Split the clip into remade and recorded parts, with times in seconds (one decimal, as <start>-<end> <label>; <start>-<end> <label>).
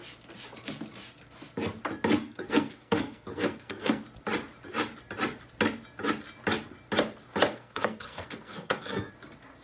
0.0-2.2 recorded; 2.2-4.0 remade; 4.0-7.5 recorded; 7.5-9.1 remade; 9.1-9.6 recorded